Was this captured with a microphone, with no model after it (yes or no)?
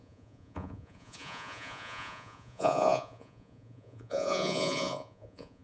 no